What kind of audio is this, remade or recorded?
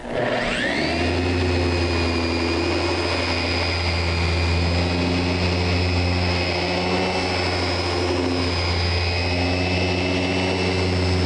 recorded